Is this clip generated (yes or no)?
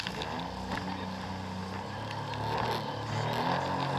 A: no